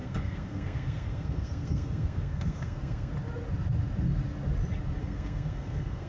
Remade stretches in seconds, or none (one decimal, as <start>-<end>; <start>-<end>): 0.0-3.1; 5.0-6.1